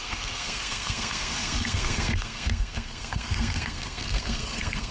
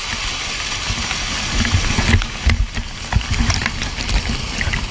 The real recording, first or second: second